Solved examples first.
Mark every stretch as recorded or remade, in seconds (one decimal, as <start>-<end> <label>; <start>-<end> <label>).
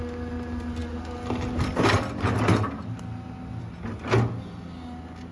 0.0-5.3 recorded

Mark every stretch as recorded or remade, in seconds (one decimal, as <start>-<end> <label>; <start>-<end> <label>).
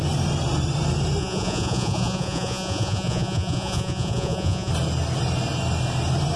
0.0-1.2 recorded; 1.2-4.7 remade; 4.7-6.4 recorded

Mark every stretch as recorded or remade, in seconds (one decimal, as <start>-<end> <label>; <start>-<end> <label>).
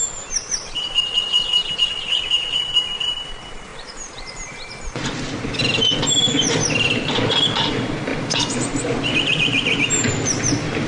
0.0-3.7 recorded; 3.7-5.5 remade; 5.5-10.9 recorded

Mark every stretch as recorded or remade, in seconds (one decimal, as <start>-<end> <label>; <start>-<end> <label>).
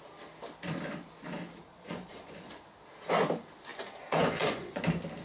0.0-1.7 recorded; 1.7-2.5 remade; 2.5-3.7 recorded; 3.7-4.8 remade; 4.8-5.2 recorded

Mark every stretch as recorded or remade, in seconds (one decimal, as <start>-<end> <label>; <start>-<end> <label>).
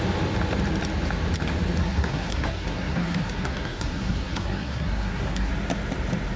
0.0-1.8 recorded; 1.8-5.5 remade; 5.5-6.4 recorded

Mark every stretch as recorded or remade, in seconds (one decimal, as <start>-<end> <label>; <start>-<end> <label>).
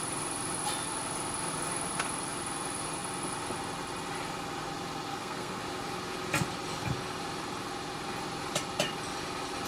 0.0-5.1 recorded; 5.1-5.6 remade; 5.6-9.7 recorded